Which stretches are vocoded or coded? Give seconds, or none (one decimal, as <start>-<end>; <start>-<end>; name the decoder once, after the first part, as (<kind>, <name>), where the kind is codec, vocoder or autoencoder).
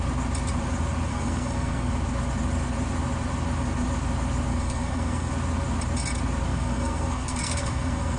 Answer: 1.1-1.9 (codec, SNAC); 4.5-5.3; 6.5-8.2